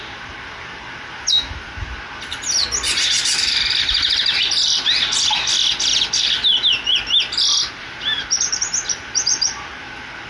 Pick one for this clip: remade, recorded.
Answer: recorded